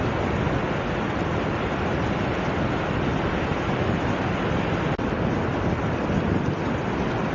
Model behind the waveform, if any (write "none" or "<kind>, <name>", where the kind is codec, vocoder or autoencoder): none